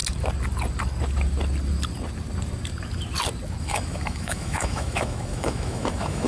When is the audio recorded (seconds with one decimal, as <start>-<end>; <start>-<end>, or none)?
0.0-3.6